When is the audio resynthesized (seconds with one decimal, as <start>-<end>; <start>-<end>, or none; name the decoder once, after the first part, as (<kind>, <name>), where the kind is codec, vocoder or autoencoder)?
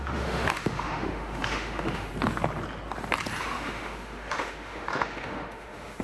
0.0-2.1 (autoencoder, DAC-VAE); 3.4-6.0